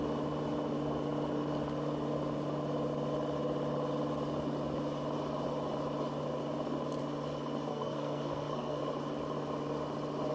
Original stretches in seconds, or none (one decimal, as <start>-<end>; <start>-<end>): 0.0-7.7; 8.8-10.3

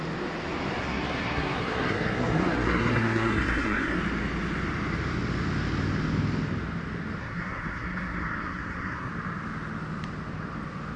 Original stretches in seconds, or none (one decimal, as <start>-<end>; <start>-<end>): 0.0-0.8; 4.0-7.2; 9.1-11.0

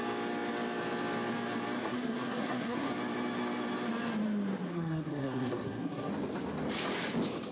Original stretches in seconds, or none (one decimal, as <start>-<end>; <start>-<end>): 0.0-1.8; 2.9-4.7; 6.1-7.5

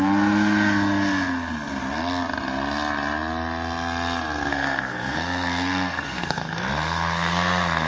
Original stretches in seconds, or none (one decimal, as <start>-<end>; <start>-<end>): 0.0-4.5